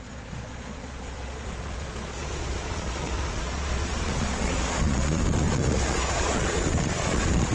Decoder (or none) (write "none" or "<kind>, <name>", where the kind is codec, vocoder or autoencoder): vocoder, Vocos